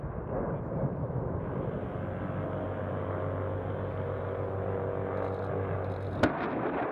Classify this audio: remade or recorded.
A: recorded